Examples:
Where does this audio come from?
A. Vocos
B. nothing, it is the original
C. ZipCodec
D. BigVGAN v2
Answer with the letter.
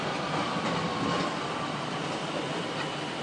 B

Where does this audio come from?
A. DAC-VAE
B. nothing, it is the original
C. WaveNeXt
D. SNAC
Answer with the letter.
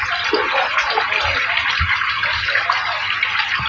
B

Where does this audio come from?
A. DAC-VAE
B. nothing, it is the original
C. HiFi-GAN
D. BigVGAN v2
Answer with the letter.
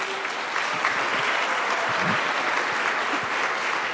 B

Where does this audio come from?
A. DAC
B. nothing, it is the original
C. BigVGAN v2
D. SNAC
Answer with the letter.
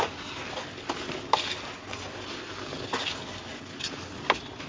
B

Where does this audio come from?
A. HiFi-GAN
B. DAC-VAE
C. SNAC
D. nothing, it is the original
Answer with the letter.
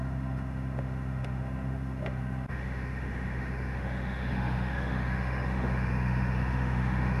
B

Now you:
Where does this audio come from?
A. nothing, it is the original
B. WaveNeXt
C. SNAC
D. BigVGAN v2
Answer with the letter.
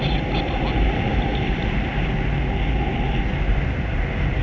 A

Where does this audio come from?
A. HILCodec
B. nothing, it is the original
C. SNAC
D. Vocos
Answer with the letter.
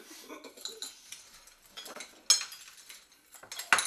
B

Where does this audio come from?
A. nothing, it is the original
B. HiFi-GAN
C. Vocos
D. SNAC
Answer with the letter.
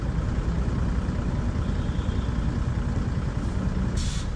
A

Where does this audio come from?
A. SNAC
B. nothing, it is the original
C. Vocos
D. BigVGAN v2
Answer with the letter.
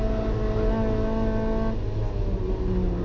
B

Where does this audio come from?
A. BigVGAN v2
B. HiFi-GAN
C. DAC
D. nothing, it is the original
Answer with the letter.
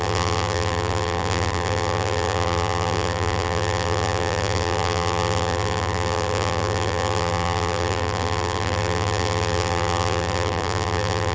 A